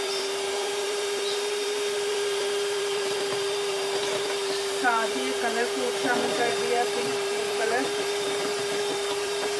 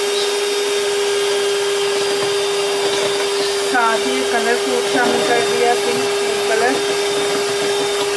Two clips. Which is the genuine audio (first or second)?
second